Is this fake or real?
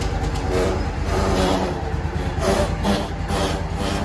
real